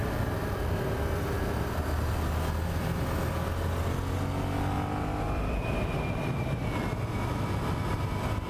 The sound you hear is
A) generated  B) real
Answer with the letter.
B